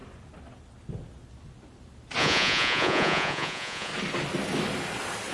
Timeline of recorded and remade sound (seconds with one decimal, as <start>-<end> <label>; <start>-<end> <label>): 0.0-2.2 recorded; 2.2-3.9 remade; 3.9-5.3 recorded